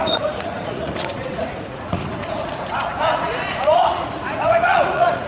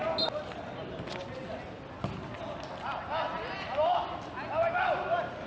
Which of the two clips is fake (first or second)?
first